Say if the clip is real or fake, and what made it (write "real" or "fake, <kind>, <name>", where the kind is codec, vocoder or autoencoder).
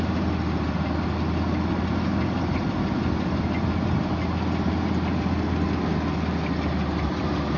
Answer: real